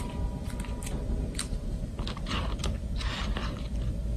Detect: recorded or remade recorded